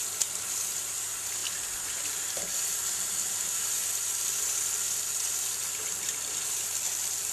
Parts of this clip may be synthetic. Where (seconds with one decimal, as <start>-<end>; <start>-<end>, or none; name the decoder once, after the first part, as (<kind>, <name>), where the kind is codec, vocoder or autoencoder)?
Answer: none